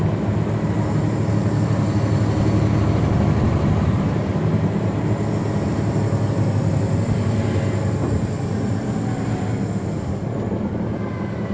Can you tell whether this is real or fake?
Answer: real